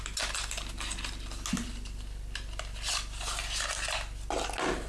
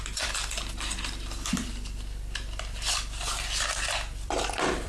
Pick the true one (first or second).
first